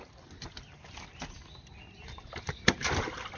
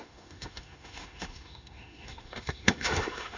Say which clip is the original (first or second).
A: first